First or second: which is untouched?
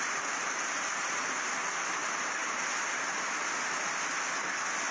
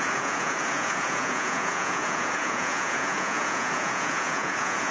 first